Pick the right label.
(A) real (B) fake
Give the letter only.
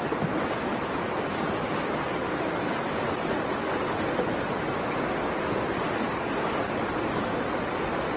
A